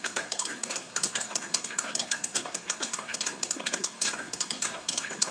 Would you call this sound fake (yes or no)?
yes